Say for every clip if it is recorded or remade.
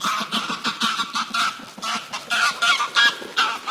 recorded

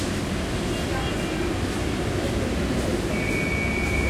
recorded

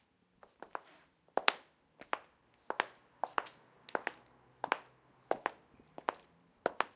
recorded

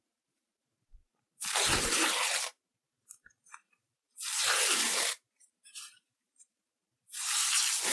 remade